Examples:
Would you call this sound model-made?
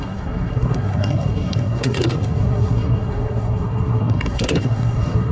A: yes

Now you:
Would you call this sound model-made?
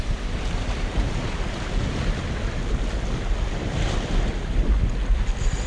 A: no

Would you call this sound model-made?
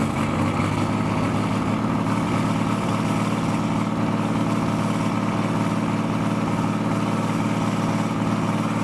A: no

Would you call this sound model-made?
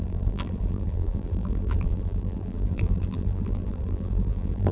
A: yes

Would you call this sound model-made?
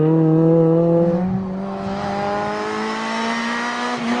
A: no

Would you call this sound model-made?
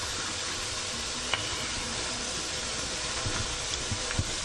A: no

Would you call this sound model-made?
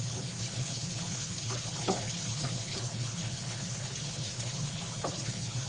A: yes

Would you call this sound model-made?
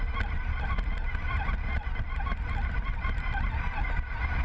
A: no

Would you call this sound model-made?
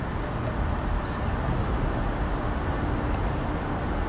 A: no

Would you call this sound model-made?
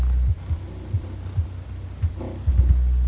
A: no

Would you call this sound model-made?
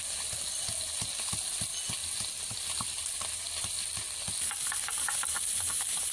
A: no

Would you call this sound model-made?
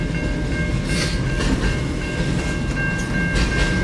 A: no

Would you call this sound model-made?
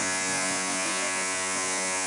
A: yes